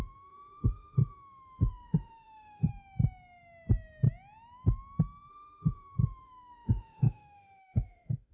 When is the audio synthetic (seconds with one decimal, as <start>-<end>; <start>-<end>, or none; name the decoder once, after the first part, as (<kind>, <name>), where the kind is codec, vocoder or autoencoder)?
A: 0.0-2.7 (autoencoder, DAC-VAE); 5.3-8.3